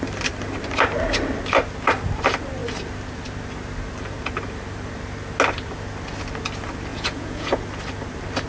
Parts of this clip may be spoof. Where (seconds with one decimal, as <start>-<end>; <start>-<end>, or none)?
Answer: 6.9-7.6